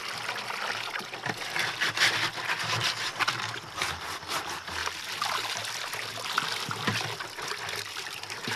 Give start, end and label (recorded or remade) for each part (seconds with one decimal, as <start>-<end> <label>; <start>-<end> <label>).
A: 0.0-8.6 recorded